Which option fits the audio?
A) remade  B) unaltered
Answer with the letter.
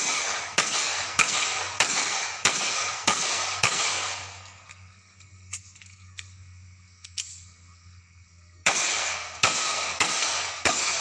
A